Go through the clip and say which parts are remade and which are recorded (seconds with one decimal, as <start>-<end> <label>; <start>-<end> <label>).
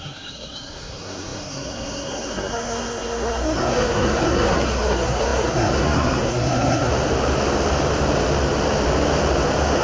0.0-6.9 remade; 6.9-9.8 recorded